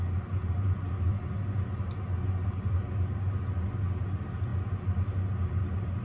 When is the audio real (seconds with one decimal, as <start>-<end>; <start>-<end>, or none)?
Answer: 0.0-6.0